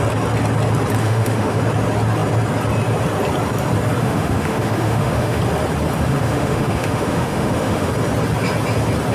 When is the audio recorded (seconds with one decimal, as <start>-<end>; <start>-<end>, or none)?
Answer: 0.0-1.0; 1.6-4.0; 5.4-6.1; 7.9-9.1